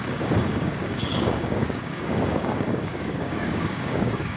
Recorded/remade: remade